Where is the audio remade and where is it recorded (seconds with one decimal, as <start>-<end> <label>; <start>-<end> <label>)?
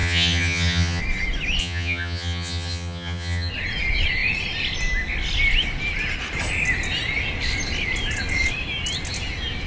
0.0-1.0 remade; 1.0-1.6 recorded; 1.6-3.5 remade; 3.5-9.7 recorded